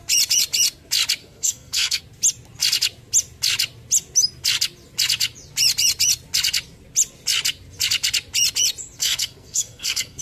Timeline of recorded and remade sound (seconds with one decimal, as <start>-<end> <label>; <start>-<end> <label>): 0.0-1.2 recorded; 1.2-2.0 remade; 2.0-9.0 recorded; 9.0-10.2 remade